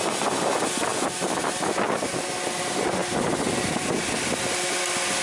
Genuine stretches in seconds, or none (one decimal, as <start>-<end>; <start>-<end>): 0.0-5.2